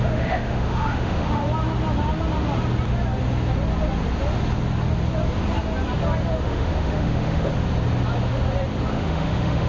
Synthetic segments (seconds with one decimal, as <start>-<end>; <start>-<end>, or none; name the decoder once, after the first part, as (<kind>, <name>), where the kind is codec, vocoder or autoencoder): 0.0-1.4 (autoencoder, DAC-VAE); 6.4-7.5; 8.9-9.7